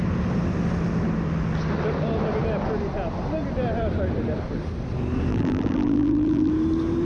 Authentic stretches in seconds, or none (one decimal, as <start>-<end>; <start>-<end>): 0.0-5.3; 6.5-7.0